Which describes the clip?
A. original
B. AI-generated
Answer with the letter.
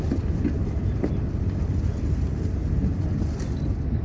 A